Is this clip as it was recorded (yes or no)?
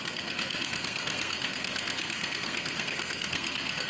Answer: no